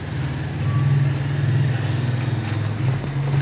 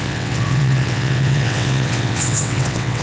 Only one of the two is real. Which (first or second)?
first